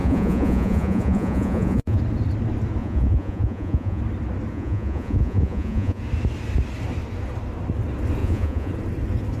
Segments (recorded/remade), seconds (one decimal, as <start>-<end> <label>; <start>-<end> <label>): 0.0-2.0 remade; 2.0-2.8 recorded; 2.8-4.0 remade; 4.0-4.5 recorded; 4.5-6.0 remade; 6.0-8.2 recorded; 8.2-8.7 remade; 8.7-9.4 recorded